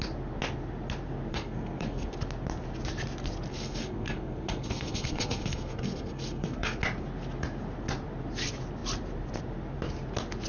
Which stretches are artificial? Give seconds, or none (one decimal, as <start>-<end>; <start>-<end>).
1.3-2.1; 3.5-6.8